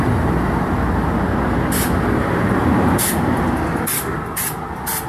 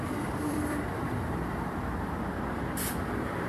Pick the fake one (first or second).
second